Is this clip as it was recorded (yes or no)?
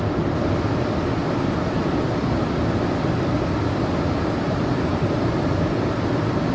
yes